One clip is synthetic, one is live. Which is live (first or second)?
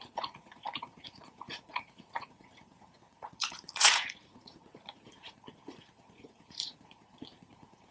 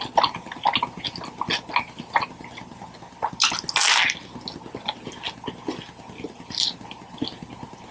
second